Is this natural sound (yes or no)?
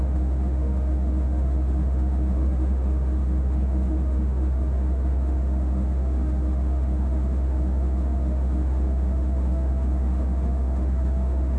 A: no